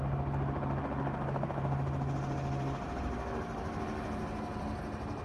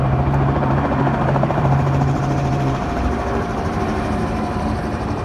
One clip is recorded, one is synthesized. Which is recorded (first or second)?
first